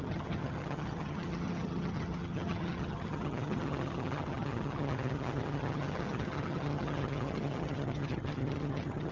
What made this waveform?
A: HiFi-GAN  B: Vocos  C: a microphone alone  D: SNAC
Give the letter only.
A